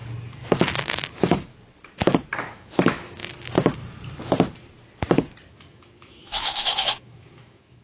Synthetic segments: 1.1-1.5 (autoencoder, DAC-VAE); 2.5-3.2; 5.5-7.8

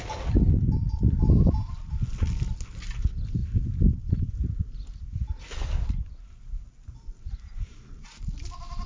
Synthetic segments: none

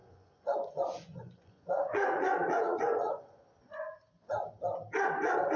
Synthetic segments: 0.0-3.4 (vocoder, Vocos)

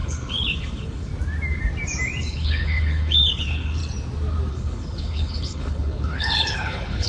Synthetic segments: 0.0-1.1 (codec, HILCodec); 2.2-3.8; 4.5-7.1

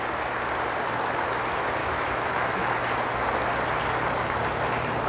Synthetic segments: 1.8-2.7 (autoencoder, DAC-VAE)

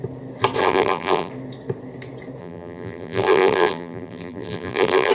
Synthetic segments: 0.6-1.3 (vocoder, BigVGAN v2); 2.4-5.1